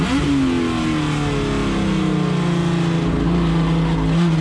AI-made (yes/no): no